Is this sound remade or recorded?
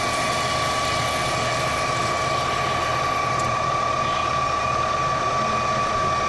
recorded